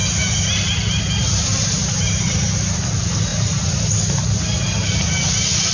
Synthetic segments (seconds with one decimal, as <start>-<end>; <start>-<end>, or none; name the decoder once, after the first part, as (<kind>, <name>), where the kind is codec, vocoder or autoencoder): 3.3-4.0 (vocoder, BigVGAN v2)